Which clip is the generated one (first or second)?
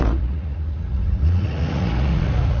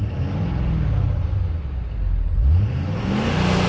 first